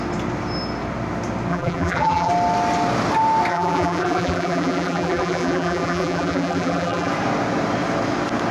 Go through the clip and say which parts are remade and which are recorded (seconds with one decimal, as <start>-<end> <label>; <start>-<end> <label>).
0.0-1.5 recorded; 1.5-2.3 remade; 2.3-3.5 recorded; 3.5-7.1 remade; 7.1-8.5 recorded